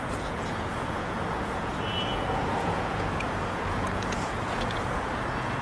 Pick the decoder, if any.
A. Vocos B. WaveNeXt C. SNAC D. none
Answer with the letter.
A